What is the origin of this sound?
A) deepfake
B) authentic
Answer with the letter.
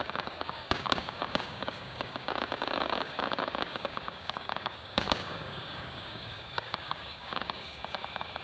A